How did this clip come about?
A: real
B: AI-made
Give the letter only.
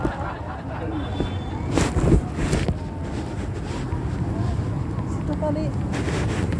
A